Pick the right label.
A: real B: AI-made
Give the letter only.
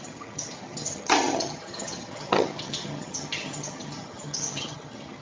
B